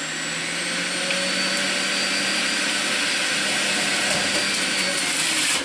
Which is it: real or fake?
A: real